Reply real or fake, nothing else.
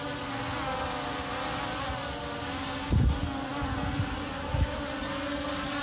real